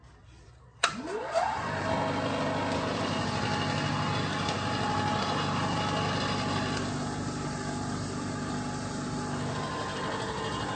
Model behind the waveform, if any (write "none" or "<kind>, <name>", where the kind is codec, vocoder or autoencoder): none